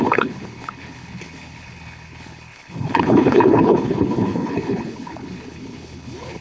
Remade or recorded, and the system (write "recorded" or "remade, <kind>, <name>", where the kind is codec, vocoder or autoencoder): remade, codec, HILCodec